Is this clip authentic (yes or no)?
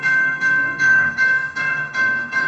no